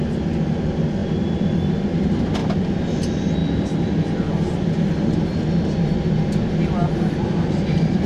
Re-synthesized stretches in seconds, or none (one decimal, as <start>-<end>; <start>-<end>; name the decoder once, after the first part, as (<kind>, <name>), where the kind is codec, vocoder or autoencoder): none